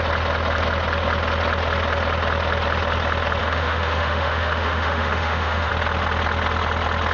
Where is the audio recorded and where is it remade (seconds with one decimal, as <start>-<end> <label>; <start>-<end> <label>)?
0.0-3.4 recorded; 3.4-5.7 remade; 5.7-7.1 recorded